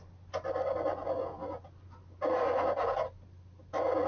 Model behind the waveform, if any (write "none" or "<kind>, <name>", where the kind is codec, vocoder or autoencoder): none